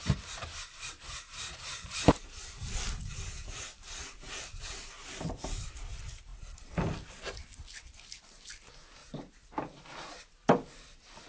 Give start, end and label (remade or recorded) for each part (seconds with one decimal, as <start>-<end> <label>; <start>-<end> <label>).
0.0-11.3 recorded